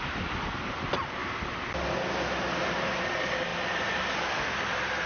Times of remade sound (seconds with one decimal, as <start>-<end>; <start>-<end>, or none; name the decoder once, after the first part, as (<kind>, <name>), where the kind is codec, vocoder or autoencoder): 3.5-4.1 (vocoder, BigVGAN v2)